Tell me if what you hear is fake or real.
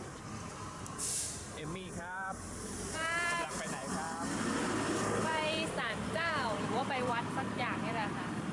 fake